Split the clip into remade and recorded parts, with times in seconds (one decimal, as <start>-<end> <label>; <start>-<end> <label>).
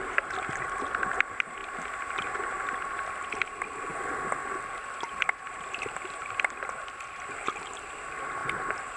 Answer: 0.0-9.0 recorded